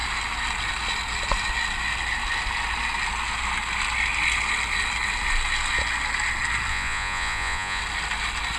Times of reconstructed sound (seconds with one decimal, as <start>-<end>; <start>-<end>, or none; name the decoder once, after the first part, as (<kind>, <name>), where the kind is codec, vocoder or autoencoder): 6.7-7.8 (vocoder, Vocos)

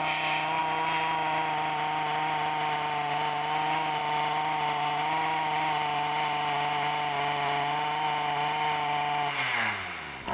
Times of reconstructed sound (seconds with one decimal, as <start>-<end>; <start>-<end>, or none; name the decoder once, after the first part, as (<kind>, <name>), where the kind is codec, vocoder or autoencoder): none

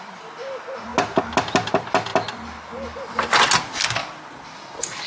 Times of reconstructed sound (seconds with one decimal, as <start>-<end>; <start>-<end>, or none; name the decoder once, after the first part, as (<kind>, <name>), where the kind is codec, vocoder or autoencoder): 0.0-0.9 (vocoder, BigVGAN v2); 1.4-2.1; 4.3-5.1

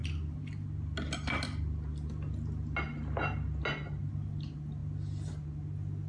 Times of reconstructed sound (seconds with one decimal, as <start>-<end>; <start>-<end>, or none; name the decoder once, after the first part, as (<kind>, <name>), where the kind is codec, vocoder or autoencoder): none